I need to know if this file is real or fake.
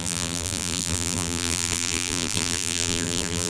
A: fake